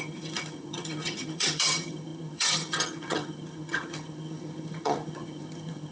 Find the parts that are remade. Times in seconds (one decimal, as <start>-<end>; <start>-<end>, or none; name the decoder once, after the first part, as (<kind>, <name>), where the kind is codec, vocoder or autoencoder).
0.0-5.9 (vocoder, HiFi-GAN)